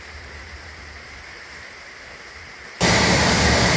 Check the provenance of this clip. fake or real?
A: fake